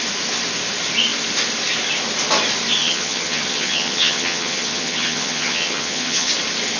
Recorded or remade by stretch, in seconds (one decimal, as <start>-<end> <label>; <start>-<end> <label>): 0.0-2.8 recorded; 2.8-6.3 remade; 6.3-6.8 recorded